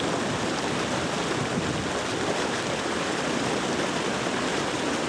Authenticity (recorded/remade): recorded